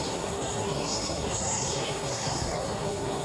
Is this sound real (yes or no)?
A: no